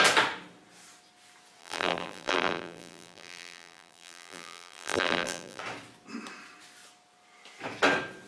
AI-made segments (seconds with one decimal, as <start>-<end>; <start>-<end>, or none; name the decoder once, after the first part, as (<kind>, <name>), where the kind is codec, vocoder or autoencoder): 1.6-5.6 (vocoder, BigVGAN v2)